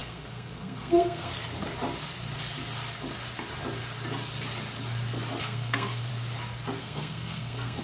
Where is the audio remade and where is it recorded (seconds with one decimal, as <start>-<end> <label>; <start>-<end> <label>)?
0.0-1.3 remade; 1.3-5.4 recorded; 5.4-6.1 remade; 6.1-6.8 recorded; 6.8-7.8 remade